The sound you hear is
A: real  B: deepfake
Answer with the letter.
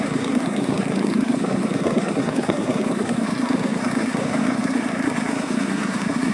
B